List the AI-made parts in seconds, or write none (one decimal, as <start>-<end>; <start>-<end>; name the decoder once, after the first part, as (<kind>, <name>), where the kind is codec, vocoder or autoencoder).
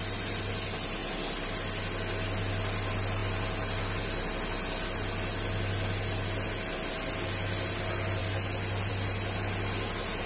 none